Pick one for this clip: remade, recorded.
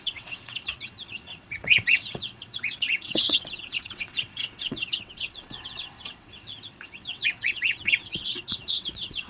remade